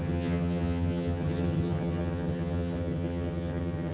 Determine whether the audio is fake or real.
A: fake